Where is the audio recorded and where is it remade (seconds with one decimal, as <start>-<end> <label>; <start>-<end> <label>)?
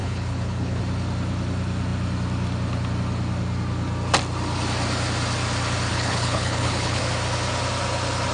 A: 0.0-0.8 remade; 0.8-5.9 recorded; 5.9-7.0 remade; 7.0-8.3 recorded